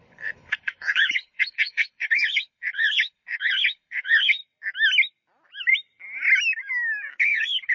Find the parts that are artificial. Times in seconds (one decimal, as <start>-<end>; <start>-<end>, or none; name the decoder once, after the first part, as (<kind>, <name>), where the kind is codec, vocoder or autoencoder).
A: 0.0-4.4 (codec, HILCodec); 7.2-7.7